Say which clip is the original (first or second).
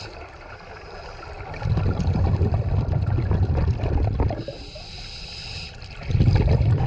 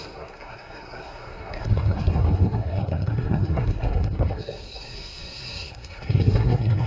first